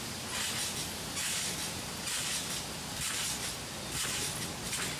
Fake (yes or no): no